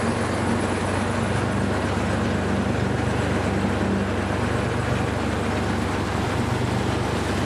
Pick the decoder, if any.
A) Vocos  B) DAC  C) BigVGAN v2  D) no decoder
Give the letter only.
D